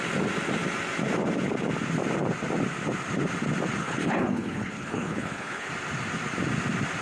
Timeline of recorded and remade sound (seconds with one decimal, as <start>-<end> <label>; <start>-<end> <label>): 0.0-3.8 recorded; 3.8-5.7 remade; 5.7-7.0 recorded